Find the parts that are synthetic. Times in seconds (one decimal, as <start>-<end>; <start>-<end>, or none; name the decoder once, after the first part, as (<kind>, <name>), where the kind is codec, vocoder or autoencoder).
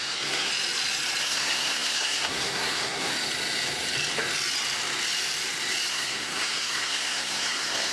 0.0-0.5 (codec, SNAC); 1.2-3.1; 5.9-7.9